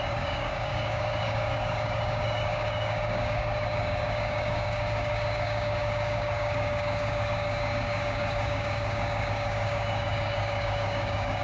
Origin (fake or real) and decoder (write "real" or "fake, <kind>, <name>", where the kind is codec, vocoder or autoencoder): fake, codec, DAC